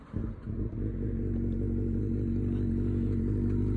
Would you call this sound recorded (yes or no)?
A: yes